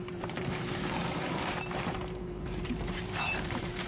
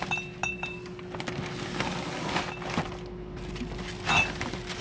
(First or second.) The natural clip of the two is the second